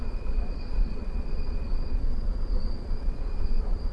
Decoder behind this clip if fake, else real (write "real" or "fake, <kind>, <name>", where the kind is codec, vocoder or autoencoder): fake, vocoder, Vocos